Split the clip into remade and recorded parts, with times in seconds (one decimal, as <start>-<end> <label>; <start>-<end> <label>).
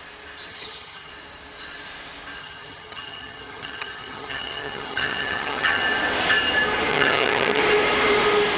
0.0-0.5 recorded; 0.5-1.1 remade; 1.1-2.4 recorded; 2.4-5.8 remade; 5.8-6.9 recorded; 6.9-7.6 remade; 7.6-8.6 recorded